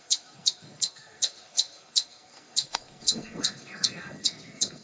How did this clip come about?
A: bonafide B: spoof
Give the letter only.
B